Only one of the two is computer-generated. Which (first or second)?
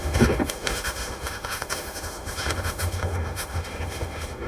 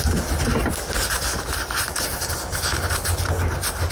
first